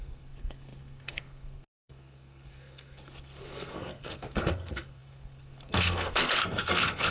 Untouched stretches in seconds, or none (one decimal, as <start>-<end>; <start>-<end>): none